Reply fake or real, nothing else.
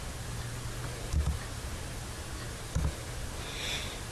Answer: real